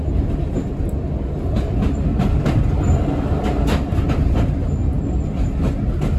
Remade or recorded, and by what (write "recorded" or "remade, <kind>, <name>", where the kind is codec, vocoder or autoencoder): recorded